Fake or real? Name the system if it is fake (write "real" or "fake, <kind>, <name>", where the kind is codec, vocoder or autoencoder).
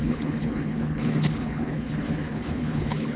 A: fake, codec, HILCodec